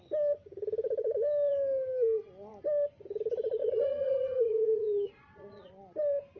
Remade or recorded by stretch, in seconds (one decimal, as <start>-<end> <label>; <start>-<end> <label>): 0.0-3.6 recorded; 3.6-5.7 remade; 5.7-6.4 recorded